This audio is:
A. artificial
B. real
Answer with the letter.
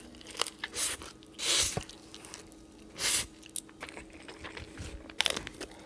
B